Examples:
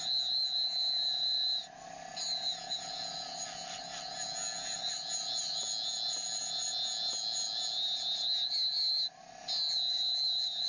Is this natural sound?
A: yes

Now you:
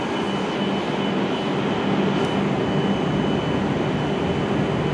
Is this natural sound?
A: yes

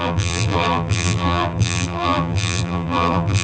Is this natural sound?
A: no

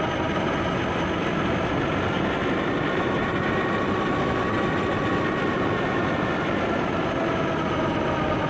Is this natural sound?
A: yes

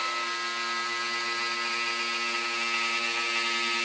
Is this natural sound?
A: yes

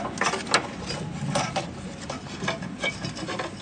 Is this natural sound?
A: yes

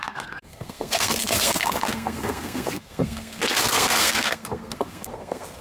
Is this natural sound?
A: no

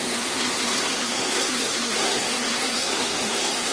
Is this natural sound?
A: no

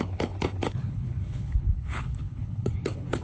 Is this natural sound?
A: no